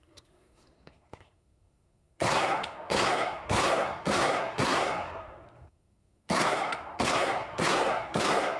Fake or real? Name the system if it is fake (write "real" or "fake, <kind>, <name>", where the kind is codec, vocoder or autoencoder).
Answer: fake, codec, SNAC